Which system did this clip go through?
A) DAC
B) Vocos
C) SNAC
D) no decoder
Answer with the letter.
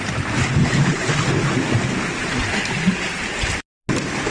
D